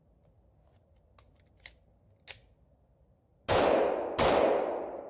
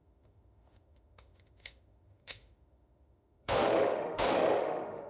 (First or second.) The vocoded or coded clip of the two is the second